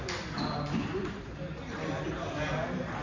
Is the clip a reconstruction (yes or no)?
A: no